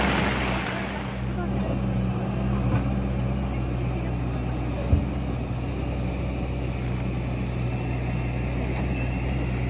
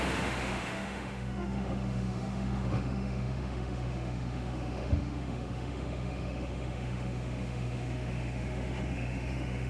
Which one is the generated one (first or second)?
second